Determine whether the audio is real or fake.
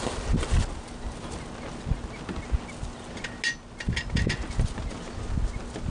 real